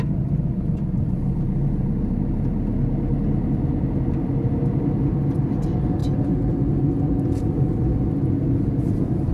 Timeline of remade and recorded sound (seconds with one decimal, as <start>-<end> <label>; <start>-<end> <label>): 0.0-9.3 recorded